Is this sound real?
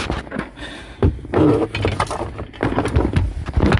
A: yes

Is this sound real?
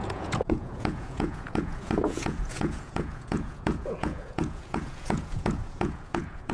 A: no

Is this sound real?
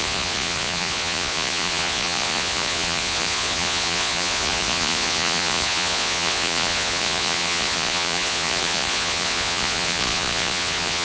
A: no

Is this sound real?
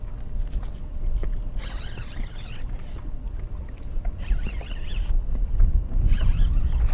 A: yes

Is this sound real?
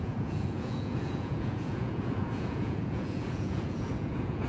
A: no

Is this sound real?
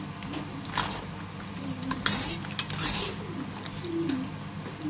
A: yes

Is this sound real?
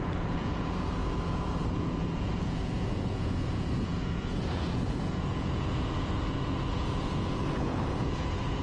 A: no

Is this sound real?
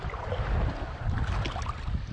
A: yes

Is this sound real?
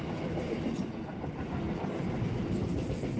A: yes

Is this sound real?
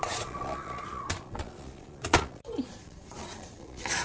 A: no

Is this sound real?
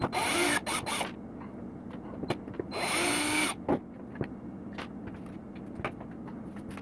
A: yes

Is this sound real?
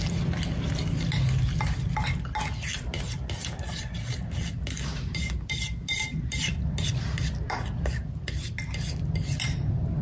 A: yes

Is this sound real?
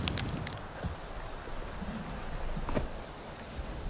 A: yes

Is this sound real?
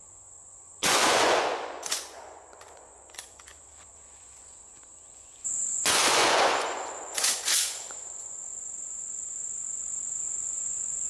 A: no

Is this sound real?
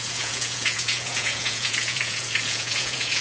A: no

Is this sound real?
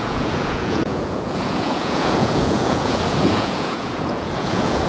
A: no